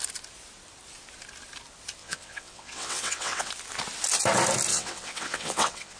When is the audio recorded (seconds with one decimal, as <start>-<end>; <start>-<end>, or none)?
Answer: 0.0-2.0; 3.5-4.7